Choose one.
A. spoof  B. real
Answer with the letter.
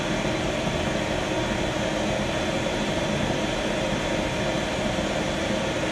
B